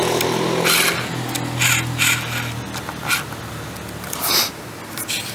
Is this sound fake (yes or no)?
no